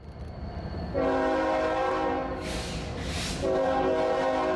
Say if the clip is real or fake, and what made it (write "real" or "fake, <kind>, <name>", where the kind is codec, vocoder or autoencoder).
real